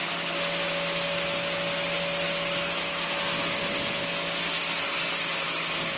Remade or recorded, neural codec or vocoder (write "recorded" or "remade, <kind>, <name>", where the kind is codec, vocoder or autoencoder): recorded